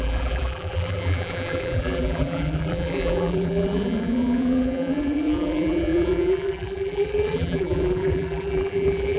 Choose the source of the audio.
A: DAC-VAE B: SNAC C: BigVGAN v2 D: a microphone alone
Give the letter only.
C